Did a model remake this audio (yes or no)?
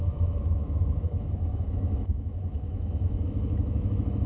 yes